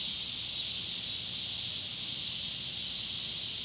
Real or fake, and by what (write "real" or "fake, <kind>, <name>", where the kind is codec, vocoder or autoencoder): real